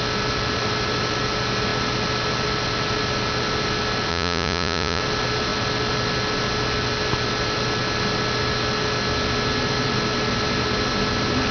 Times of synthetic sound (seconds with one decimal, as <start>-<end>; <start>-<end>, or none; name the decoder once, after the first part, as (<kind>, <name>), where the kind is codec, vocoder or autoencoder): 4.1-5.0 (vocoder, Vocos)